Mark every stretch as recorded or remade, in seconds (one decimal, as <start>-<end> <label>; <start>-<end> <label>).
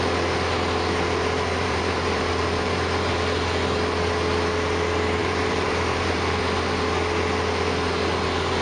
0.0-1.5 recorded; 1.5-3.1 remade; 3.1-5.2 recorded; 5.2-6.4 remade; 6.4-8.6 recorded